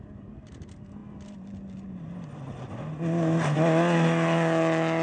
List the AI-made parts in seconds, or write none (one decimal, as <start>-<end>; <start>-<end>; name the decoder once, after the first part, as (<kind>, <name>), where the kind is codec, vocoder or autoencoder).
none

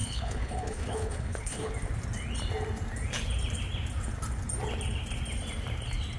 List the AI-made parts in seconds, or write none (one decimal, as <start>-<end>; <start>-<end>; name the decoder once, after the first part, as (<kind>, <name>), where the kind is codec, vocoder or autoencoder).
0.0-1.7 (codec, HILCodec)

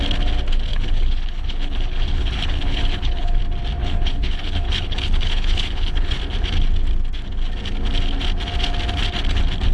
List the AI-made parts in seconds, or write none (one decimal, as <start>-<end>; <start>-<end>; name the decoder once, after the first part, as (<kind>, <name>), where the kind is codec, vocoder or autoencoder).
0.7-3.4 (codec, HILCodec); 3.8-6.2